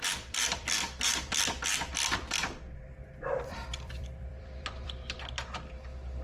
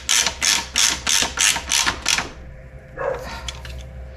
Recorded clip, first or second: second